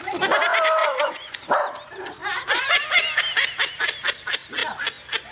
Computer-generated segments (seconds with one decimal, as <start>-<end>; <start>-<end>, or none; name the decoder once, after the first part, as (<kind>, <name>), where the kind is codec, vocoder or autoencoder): 0.8-1.4 (vocoder, Vocos)